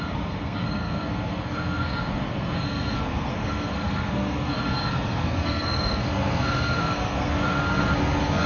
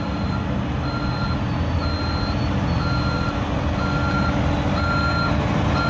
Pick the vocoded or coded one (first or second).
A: first